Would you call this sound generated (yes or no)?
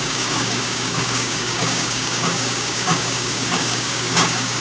yes